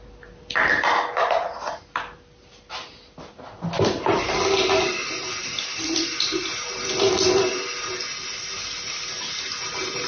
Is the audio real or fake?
real